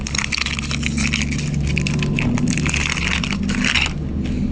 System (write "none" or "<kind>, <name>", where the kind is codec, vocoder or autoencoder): none